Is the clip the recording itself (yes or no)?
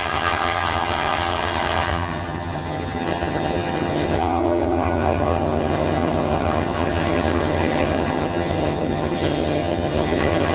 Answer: no